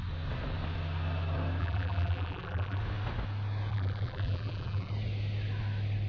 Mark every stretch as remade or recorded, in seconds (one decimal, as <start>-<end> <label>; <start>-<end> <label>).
0.0-1.6 recorded; 1.6-2.8 remade; 2.8-3.7 recorded; 3.7-4.9 remade; 4.9-6.1 recorded